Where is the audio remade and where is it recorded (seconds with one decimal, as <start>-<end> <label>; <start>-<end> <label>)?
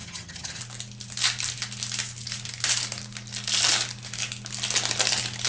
0.0-0.6 remade; 0.6-5.5 recorded